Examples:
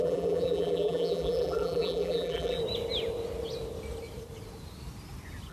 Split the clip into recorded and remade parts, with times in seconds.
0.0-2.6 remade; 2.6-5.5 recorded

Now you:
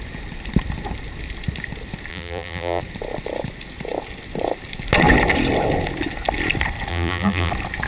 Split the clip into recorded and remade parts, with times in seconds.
0.0-2.1 recorded; 2.1-2.8 remade; 2.8-6.9 recorded; 6.9-7.5 remade; 7.5-7.9 recorded

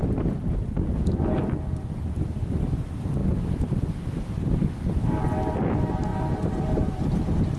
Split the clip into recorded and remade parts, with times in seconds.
0.0-6.1 recorded; 6.1-7.1 remade; 7.1-7.6 recorded

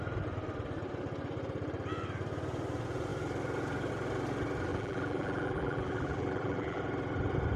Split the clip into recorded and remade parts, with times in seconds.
0.0-4.7 recorded; 4.7-6.8 remade; 6.8-7.6 recorded

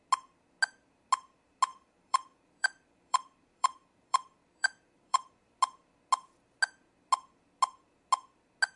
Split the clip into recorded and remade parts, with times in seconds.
0.0-1.7 recorded; 1.7-5.3 remade; 5.3-8.8 recorded

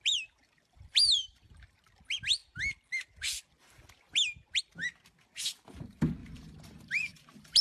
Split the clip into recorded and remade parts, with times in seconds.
0.0-0.4 recorded; 0.4-1.8 remade; 1.8-6.2 recorded; 6.2-7.6 remade